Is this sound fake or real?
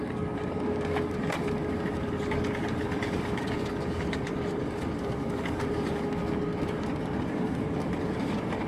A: fake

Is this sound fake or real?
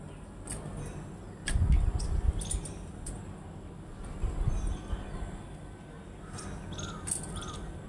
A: real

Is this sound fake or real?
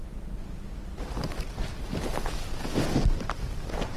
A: real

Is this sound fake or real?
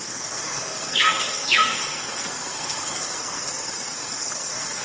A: fake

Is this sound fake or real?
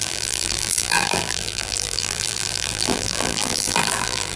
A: fake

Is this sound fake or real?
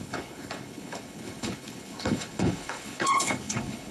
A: fake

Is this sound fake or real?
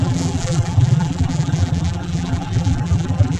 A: fake